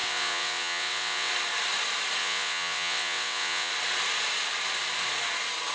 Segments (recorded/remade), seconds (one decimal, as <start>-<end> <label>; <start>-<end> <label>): 0.0-1.3 remade; 1.3-2.2 recorded; 2.2-3.7 remade; 3.7-5.7 recorded